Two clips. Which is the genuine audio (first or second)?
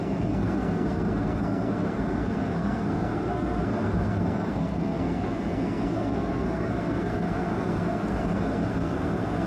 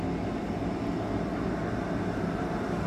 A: second